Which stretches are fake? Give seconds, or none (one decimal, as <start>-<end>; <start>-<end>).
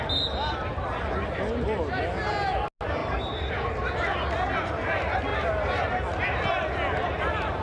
none